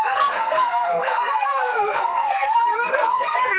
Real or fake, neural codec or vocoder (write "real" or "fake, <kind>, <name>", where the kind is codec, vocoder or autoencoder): fake, codec, SNAC